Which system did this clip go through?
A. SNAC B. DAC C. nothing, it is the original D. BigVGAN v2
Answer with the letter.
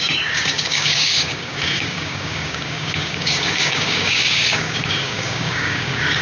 B